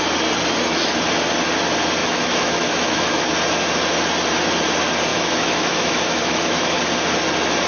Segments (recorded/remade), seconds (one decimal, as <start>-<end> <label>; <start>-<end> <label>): 0.0-2.0 recorded; 2.0-3.3 remade; 3.3-5.1 recorded; 5.1-6.8 remade; 6.8-7.7 recorded